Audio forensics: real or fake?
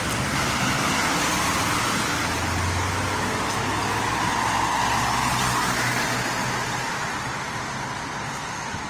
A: real